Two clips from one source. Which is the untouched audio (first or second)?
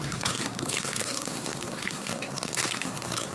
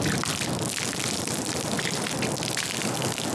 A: second